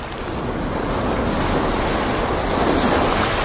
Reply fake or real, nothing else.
real